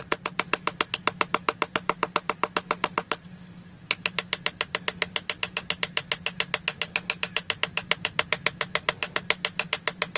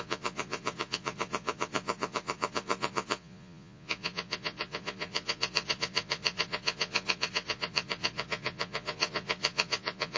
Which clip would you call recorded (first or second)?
first